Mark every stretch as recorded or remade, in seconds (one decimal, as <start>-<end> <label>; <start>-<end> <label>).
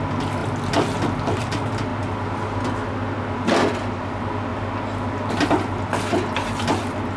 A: 0.0-7.2 recorded